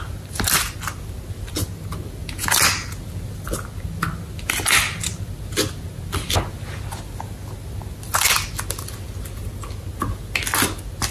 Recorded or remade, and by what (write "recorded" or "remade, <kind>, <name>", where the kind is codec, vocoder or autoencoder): recorded